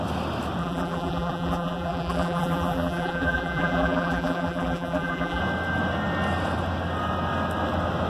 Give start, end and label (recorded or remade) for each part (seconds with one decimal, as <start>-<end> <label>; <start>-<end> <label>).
0.0-0.6 recorded; 0.6-5.4 remade; 5.4-8.1 recorded